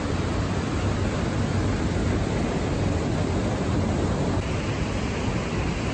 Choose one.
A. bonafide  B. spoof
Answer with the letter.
A